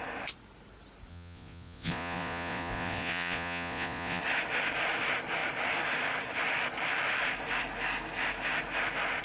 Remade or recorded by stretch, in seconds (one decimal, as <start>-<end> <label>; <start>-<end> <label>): 0.0-1.1 recorded; 1.1-4.2 remade; 4.2-9.2 recorded